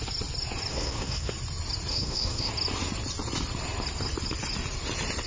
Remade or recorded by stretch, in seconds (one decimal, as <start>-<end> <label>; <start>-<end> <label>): 0.0-0.7 recorded; 0.7-1.3 remade; 1.3-1.9 recorded; 1.9-2.5 remade; 2.5-5.3 recorded